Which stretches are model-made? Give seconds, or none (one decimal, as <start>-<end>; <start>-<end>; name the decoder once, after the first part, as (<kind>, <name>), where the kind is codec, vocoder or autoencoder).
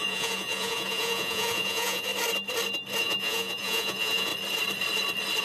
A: 0.0-2.1 (vocoder, Vocos); 3.0-4.3